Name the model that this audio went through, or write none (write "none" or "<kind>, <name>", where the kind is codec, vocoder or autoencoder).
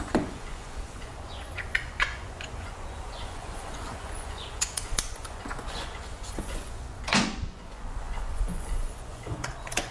vocoder, Vocos